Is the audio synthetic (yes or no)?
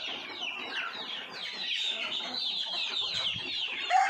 yes